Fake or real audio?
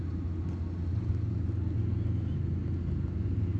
real